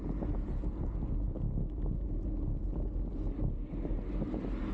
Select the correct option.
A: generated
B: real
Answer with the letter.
B